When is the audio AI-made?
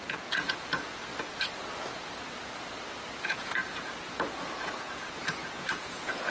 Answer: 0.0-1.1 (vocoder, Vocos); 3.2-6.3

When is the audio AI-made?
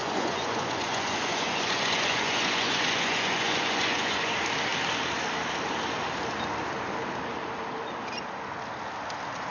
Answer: 0.0-4.3 (vocoder, Vocos)